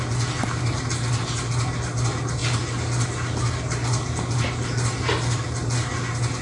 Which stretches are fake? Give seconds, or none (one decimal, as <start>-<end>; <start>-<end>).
none